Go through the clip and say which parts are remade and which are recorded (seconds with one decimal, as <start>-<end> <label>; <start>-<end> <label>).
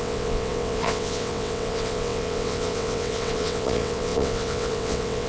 0.0-5.3 remade